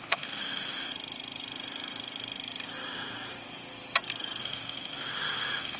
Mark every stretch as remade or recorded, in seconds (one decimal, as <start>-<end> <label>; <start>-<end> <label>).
0.0-0.9 remade; 0.9-4.4 recorded; 4.4-5.8 remade